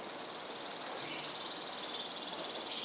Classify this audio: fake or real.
real